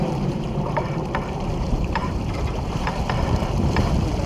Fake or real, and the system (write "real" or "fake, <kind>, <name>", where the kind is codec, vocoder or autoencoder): fake, vocoder, BigVGAN v2